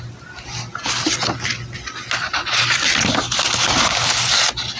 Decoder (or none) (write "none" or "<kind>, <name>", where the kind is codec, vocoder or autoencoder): none